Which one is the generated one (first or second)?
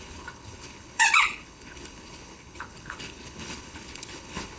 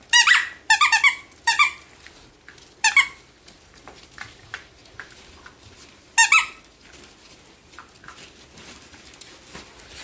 first